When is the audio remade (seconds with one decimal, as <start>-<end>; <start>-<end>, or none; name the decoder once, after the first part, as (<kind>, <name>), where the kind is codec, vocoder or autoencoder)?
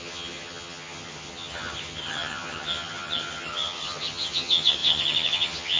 0.0-5.8 (vocoder, HiFi-GAN)